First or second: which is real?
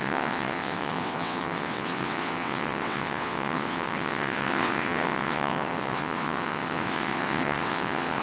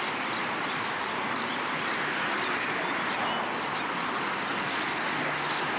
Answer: second